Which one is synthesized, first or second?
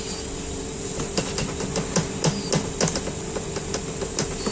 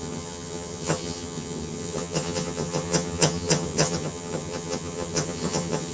second